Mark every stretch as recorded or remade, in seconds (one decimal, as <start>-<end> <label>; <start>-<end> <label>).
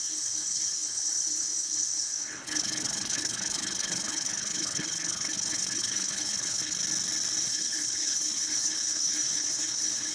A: 0.0-6.8 remade; 6.8-7.4 recorded; 7.4-10.1 remade